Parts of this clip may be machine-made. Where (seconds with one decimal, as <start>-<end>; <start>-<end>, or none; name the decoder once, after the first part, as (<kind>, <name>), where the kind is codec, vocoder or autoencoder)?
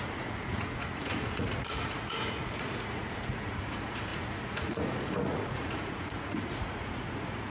0.0-7.5 (vocoder, Vocos)